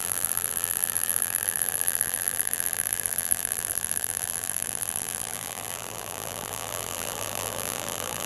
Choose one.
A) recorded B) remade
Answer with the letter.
B